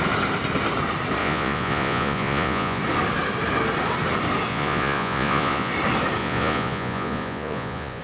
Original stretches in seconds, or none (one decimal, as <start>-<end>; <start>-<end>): 0.0-1.2; 2.8-4.5; 5.7-6.2